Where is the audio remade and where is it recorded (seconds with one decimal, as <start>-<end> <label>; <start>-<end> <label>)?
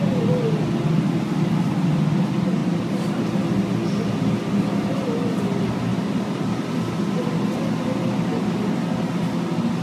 0.0-2.6 recorded; 2.6-3.3 remade; 3.3-5.9 recorded; 5.9-6.7 remade; 6.7-9.8 recorded